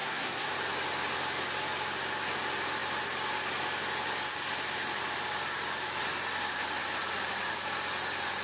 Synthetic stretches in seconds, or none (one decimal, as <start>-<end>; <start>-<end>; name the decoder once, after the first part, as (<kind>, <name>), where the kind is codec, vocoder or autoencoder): 0.0-0.5 (codec, SNAC)